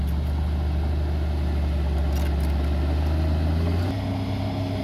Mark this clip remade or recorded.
recorded